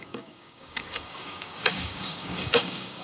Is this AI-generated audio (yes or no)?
yes